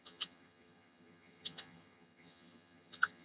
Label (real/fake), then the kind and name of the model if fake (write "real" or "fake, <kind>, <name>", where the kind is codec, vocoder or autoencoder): fake, vocoder, HiFi-GAN